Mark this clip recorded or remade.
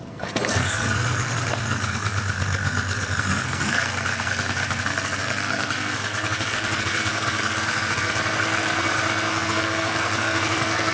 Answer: remade